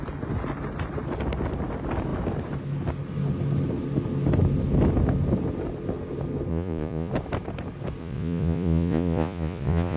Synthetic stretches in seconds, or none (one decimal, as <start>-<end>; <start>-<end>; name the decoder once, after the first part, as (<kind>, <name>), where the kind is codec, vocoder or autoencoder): 6.5-7.1 (vocoder, Vocos); 8.0-10.0